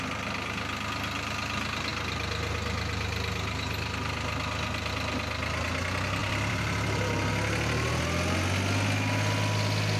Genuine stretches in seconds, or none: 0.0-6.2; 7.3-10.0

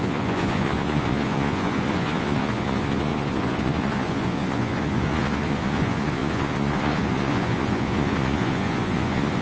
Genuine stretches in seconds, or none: none

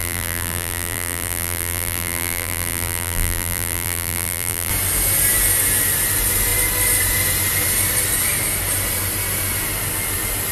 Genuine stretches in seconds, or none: 4.7-10.5